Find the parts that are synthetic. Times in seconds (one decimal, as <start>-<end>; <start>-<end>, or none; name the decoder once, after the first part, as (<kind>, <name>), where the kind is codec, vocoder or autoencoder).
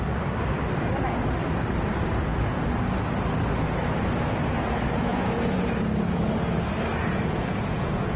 5.1-5.6 (vocoder, Vocos); 7.0-8.2